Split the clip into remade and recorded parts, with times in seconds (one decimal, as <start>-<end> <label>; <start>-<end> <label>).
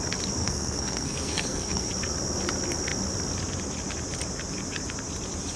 0.0-0.4 recorded; 0.4-1.9 remade; 1.9-5.6 recorded